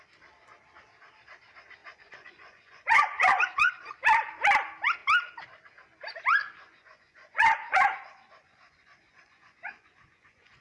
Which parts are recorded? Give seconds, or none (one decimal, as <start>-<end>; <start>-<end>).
0.0-1.8; 3.7-6.4

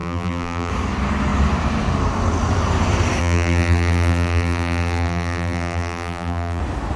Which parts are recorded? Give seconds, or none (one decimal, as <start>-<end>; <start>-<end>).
0.7-3.2; 6.6-7.0

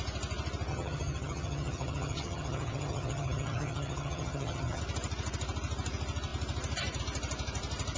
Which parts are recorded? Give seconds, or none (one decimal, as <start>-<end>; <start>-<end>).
0.0-0.7; 4.8-8.0

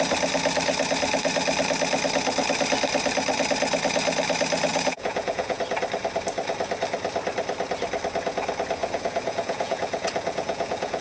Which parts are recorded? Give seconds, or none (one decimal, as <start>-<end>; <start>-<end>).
0.0-4.7; 5.6-8.8

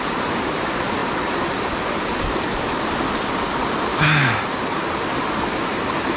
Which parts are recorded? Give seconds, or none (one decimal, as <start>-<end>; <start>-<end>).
0.0-3.9; 4.4-6.2